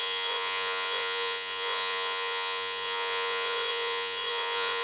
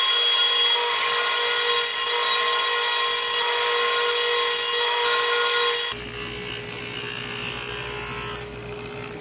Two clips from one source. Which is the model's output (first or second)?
first